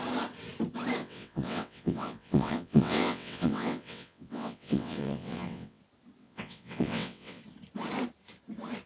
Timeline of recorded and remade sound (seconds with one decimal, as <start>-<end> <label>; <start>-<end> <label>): 0.0-1.0 recorded; 1.0-5.8 remade; 5.8-6.2 recorded; 6.2-7.4 remade; 7.4-8.9 recorded